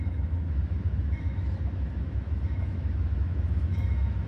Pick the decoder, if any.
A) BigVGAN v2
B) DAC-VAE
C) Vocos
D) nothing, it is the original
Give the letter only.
B